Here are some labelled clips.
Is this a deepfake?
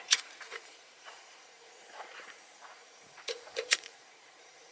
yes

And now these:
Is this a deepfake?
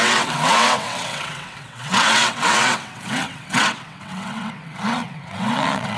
yes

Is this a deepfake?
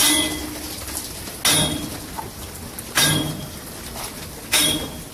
no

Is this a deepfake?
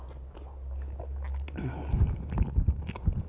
no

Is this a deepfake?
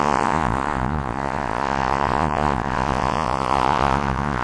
yes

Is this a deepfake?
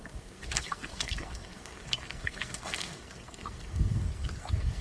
yes